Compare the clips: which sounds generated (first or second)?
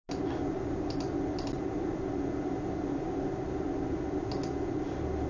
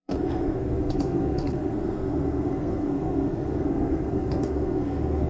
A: second